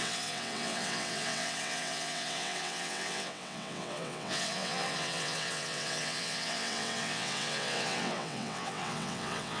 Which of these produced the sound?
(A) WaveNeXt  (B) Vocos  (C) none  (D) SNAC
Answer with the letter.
A